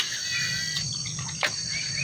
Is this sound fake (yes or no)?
no